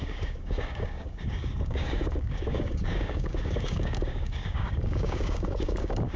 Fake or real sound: fake